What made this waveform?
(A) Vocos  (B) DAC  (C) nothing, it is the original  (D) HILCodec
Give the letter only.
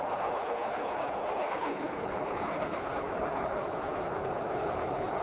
D